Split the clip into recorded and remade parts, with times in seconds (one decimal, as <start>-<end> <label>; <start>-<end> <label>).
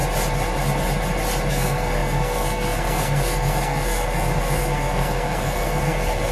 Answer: 0.0-1.5 recorded; 1.5-6.3 remade